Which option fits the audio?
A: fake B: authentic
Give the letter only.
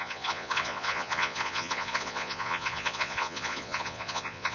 A